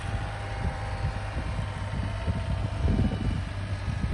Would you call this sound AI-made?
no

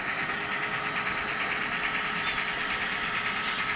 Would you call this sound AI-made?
no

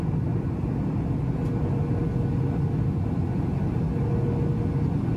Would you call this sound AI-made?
no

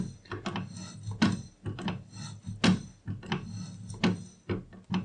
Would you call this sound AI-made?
no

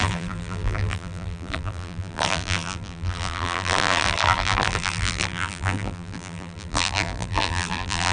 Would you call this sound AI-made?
yes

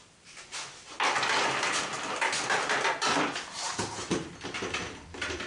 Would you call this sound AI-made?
no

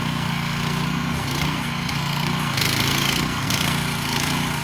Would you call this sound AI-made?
yes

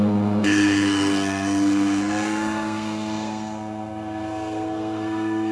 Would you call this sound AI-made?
yes